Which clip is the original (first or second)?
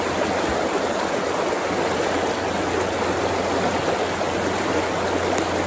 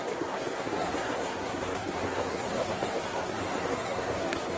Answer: first